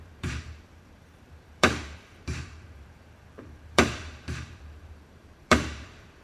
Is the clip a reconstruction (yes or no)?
yes